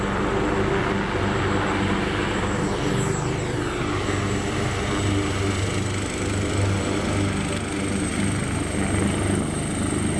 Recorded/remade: recorded